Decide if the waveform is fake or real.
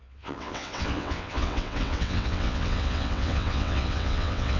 fake